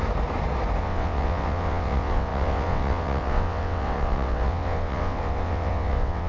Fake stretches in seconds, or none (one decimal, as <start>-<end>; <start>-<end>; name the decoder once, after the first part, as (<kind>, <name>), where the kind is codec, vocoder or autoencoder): 0.8-6.3 (vocoder, WaveNeXt)